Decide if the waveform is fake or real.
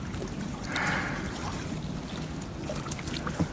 real